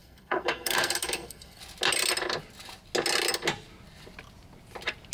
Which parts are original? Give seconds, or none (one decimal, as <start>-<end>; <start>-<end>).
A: 1.6-5.1

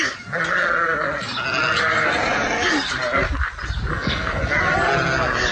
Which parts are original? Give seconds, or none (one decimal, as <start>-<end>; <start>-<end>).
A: 0.0-3.9; 4.4-5.5

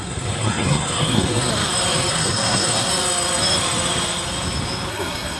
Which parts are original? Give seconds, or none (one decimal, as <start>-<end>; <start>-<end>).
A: 1.5-2.1; 2.9-4.9

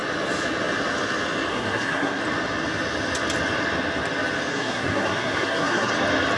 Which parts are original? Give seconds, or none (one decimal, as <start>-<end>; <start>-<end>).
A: 0.0-1.5; 2.2-4.5; 5.9-6.4

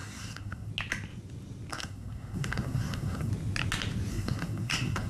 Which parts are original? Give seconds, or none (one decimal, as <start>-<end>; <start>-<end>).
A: 0.7-1.7; 3.3-4.1

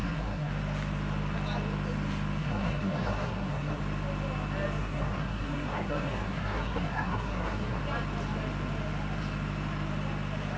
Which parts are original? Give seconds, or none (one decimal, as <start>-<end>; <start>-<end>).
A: 0.5-2.4; 3.8-4.8; 7.8-10.6

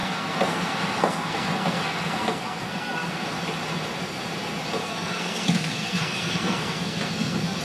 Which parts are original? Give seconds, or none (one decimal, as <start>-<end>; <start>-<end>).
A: 3.2-4.8

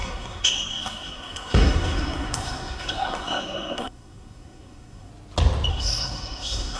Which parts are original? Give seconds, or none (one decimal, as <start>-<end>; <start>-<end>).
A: 5.1-5.7